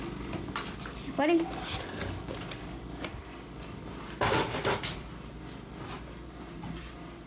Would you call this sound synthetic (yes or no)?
no